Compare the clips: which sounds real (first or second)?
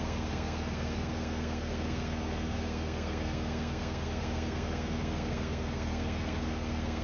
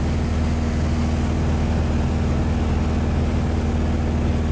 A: second